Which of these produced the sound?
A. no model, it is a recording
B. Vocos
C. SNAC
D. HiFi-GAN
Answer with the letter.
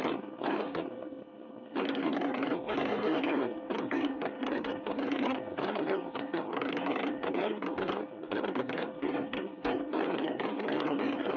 C